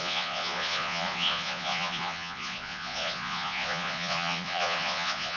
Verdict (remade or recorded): remade